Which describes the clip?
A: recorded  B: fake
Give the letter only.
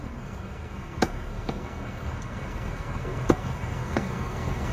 B